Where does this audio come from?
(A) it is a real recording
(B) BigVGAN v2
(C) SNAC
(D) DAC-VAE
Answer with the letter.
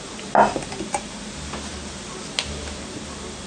A